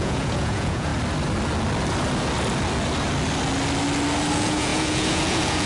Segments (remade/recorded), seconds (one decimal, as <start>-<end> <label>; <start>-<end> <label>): 0.0-0.9 remade; 0.9-4.3 recorded; 4.3-5.7 remade